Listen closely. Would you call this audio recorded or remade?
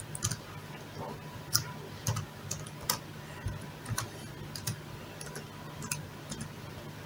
recorded